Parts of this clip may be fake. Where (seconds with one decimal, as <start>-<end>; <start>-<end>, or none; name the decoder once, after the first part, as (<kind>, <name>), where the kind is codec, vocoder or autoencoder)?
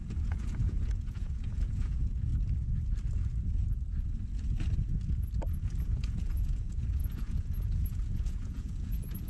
0.0-2.3 (vocoder, Vocos); 5.8-9.3